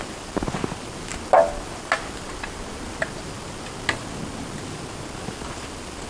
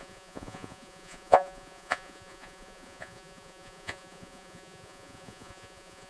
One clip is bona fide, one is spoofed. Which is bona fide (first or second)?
first